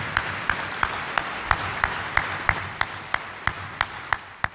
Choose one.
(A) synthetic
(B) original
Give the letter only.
B